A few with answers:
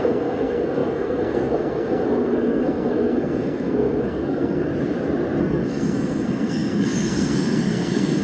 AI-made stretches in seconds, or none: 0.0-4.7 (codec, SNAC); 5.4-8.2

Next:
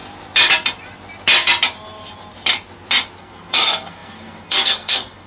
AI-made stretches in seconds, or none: 3.2-5.3 (codec, SNAC)

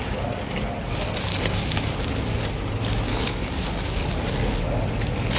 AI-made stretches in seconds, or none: 1.3-2.1 (codec, DAC); 3.1-4.6